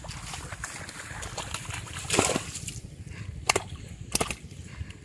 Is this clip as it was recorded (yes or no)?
yes